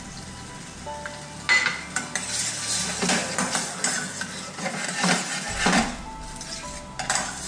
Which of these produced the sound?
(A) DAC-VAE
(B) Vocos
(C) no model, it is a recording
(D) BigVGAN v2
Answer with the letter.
C